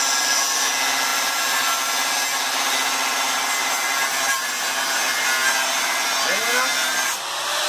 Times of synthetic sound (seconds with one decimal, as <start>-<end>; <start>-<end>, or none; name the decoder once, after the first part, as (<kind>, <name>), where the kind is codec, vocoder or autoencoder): none